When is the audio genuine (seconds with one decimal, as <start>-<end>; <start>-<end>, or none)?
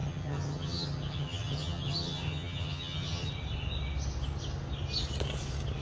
3.3-5.8